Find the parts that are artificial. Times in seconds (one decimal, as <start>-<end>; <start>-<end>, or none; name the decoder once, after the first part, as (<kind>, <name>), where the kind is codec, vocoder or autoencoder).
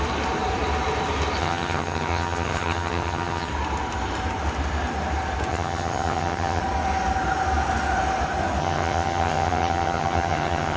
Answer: 1.4-3.5 (vocoder, HiFi-GAN); 5.5-6.6; 8.6-10.8